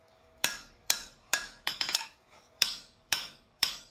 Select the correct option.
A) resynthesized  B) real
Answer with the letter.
A